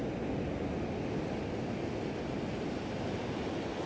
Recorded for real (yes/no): yes